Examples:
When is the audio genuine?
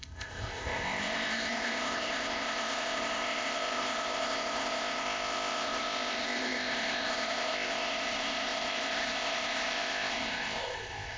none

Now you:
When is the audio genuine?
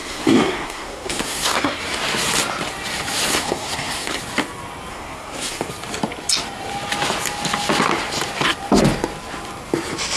1.8-3.3; 4.2-4.9; 5.7-10.2